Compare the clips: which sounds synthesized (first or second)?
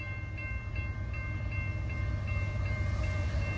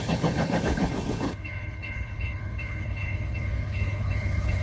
second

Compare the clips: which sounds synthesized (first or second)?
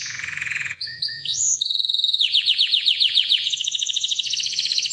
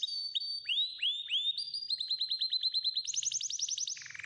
first